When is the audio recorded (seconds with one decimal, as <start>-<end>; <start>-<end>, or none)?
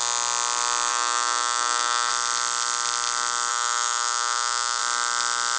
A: 0.0-0.9; 2.1-3.5; 4.8-5.6